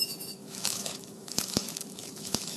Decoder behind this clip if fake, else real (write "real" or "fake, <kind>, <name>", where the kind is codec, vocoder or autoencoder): fake, autoencoder, DAC-VAE